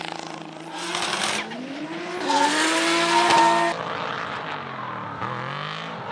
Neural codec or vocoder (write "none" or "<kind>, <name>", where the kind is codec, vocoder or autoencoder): none